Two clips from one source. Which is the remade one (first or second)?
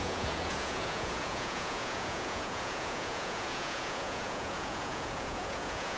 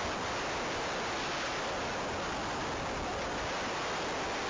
first